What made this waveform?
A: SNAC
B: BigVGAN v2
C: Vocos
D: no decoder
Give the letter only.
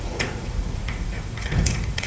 C